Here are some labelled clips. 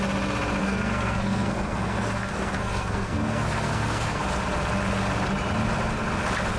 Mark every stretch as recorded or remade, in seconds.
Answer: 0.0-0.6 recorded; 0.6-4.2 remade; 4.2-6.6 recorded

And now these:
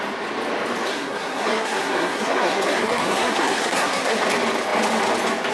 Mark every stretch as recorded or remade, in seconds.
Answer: 0.0-0.9 recorded; 0.9-4.2 remade; 4.2-5.5 recorded

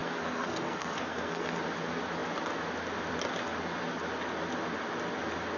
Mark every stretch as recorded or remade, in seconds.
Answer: 0.0-1.6 remade; 1.6-5.6 recorded

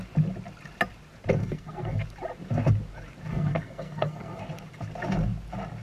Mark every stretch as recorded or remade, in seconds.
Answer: 0.0-1.4 recorded; 1.4-2.0 remade; 2.0-3.3 recorded; 3.3-4.4 remade; 4.4-5.8 recorded

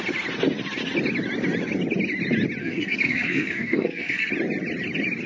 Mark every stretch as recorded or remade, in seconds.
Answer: 0.0-2.6 recorded; 2.6-4.3 remade; 4.3-5.3 recorded

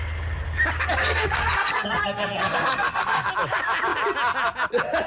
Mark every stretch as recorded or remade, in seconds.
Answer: 0.0-1.0 recorded; 1.0-3.3 remade; 3.3-5.1 recorded